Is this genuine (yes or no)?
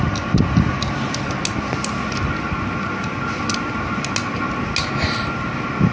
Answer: yes